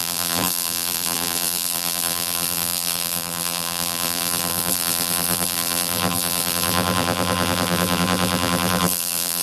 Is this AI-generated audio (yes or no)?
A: yes